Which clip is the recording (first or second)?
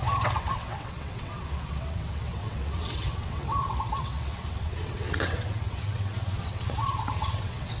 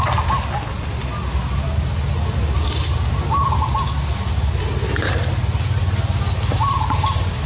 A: second